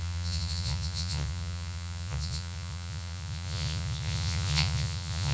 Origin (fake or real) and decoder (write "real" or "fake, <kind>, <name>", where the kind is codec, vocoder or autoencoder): fake, vocoder, Vocos